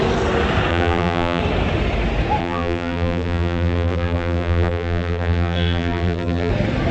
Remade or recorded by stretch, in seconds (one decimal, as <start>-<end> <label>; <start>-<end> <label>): 0.0-0.7 recorded; 0.7-1.4 remade; 1.4-2.4 recorded; 2.4-6.5 remade; 6.5-6.9 recorded